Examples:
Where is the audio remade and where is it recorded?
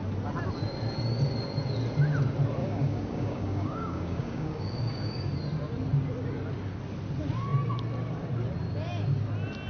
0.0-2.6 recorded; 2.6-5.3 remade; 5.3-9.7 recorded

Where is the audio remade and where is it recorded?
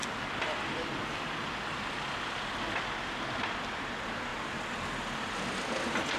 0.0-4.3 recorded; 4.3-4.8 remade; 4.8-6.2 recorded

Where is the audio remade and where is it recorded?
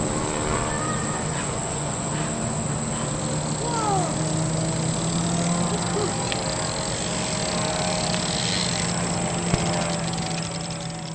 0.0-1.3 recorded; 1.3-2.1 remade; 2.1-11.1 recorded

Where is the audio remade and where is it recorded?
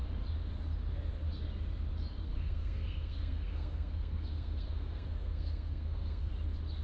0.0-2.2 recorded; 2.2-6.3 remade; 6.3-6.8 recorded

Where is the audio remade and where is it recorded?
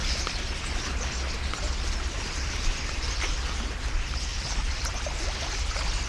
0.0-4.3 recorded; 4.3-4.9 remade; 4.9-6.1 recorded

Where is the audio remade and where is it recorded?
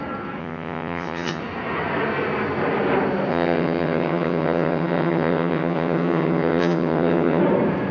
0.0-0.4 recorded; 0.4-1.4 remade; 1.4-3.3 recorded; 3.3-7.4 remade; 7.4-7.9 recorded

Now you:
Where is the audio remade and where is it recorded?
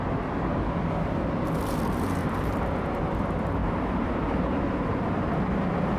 0.0-2.2 recorded; 2.2-2.8 remade; 2.8-3.6 recorded; 3.6-4.6 remade; 4.6-6.0 recorded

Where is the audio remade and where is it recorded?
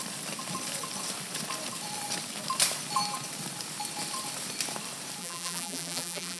0.0-5.2 recorded; 5.2-6.4 remade